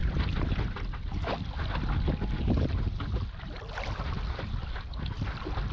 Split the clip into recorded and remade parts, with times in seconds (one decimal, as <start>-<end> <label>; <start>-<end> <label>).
0.0-5.7 recorded